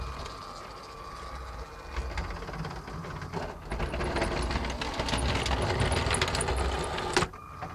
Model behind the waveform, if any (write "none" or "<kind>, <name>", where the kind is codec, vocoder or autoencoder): none